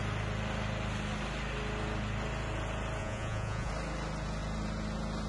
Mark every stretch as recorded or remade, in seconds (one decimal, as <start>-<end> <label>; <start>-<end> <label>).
0.0-3.0 recorded; 3.0-3.7 remade; 3.7-5.3 recorded